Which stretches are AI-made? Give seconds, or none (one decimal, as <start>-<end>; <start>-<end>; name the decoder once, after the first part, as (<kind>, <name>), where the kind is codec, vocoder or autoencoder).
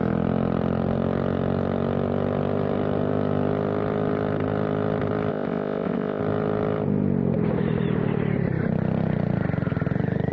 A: 5.3-6.2 (codec, ZipCodec)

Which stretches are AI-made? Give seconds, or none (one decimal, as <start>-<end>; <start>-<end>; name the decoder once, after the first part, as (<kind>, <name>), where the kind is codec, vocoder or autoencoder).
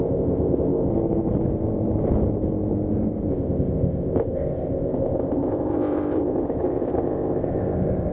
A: 0.0-0.9 (codec, ZipCodec); 3.3-8.1